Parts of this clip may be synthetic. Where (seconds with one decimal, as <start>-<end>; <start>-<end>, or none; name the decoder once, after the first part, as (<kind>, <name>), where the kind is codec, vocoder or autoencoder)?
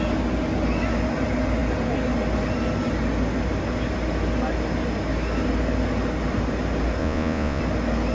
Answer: 7.0-7.6 (vocoder, Vocos)